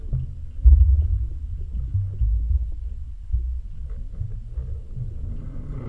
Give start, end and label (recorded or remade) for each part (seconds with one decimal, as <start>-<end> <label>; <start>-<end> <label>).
0.0-5.9 recorded